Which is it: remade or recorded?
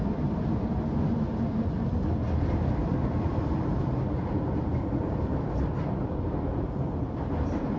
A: recorded